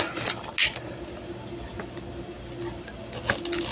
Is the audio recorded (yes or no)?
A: yes